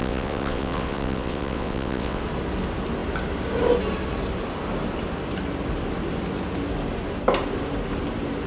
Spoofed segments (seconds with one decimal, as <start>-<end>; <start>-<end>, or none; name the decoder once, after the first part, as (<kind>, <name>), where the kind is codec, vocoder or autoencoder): 0.0-2.2 (vocoder, WaveNeXt)